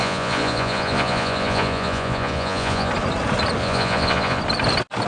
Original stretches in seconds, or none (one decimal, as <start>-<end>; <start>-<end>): 2.9-3.6; 4.4-5.1